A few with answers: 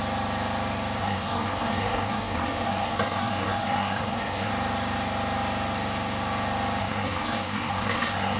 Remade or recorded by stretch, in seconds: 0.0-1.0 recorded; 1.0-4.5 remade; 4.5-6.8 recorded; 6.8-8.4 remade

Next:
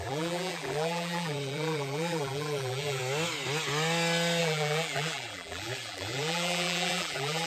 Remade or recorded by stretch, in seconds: 0.0-3.0 remade; 3.0-4.4 recorded; 4.4-7.5 remade

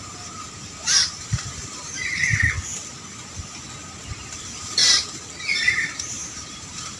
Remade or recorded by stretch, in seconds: 0.0-2.2 remade; 2.2-4.1 recorded; 4.1-4.8 remade; 4.8-5.4 recorded; 5.4-7.0 remade

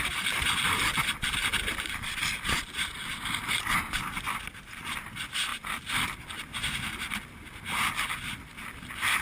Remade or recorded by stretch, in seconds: 0.0-9.2 recorded

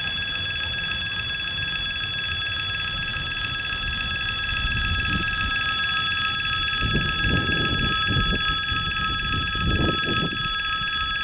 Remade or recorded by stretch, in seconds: 0.0-11.2 recorded

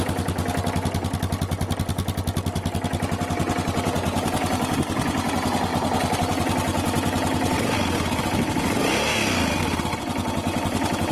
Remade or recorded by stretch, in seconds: 0.0-11.1 recorded

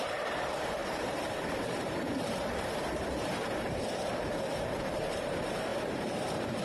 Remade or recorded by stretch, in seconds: 0.0-6.6 remade